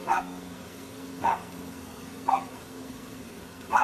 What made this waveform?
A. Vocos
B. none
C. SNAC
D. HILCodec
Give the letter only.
C